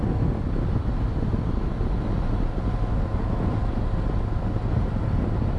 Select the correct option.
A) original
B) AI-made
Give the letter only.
A